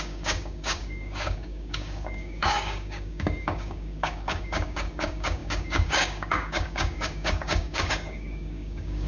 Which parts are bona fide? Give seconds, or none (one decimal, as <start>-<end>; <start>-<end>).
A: none

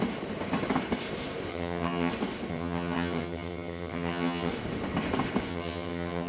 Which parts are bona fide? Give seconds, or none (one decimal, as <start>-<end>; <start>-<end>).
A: 0.0-1.5; 2.1-2.5; 4.5-5.5

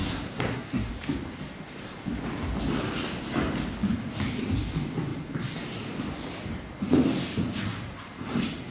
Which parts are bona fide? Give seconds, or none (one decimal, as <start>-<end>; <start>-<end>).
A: 0.9-8.7

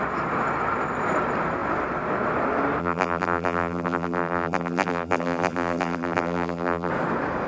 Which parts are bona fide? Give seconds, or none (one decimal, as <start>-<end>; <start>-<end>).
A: 0.0-2.8; 6.9-7.5

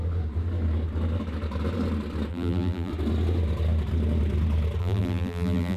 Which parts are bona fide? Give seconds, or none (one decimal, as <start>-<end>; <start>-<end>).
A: 0.0-2.3; 2.9-4.8